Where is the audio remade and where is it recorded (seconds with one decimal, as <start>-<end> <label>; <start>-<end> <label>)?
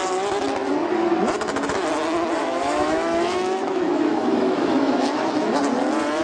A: 0.0-2.4 recorded; 2.4-5.6 remade; 5.6-6.2 recorded